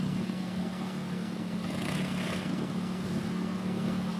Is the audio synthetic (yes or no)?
yes